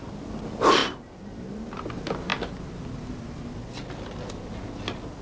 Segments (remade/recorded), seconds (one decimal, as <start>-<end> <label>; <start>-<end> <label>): 0.0-5.2 recorded

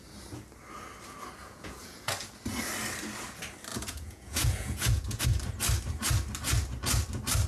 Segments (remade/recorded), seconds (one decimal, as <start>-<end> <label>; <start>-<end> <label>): 0.0-1.4 recorded; 1.4-2.1 remade; 2.1-3.7 recorded; 3.7-5.2 remade; 5.2-7.5 recorded

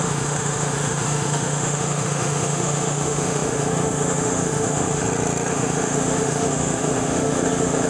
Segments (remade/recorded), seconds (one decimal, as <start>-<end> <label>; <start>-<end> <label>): 0.0-5.0 remade; 5.0-5.5 recorded; 5.5-7.9 remade

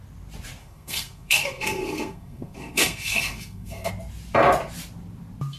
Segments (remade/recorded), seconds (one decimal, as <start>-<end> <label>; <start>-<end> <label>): 0.0-0.6 recorded; 0.6-3.9 remade; 3.9-5.6 recorded

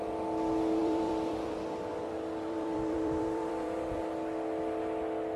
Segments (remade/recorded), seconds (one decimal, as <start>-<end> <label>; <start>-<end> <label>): 0.0-0.8 recorded; 0.8-4.0 remade; 4.0-5.4 recorded

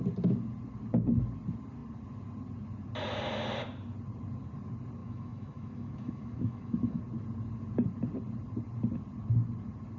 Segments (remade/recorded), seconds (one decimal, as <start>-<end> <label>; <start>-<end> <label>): 0.0-5.0 recorded; 5.0-7.0 remade; 7.0-10.0 recorded

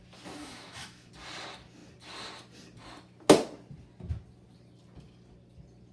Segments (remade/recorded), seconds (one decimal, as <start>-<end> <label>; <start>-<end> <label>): 0.0-0.4 recorded; 0.4-1.1 remade; 1.1-5.9 recorded

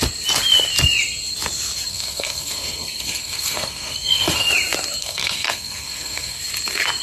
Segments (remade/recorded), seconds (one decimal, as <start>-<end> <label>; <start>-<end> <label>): 0.0-1.9 recorded; 1.9-4.5 remade; 4.5-5.0 recorded; 5.0-6.4 remade; 6.4-7.0 recorded